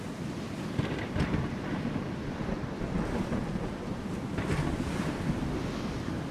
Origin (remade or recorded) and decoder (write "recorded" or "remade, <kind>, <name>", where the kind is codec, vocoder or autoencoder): recorded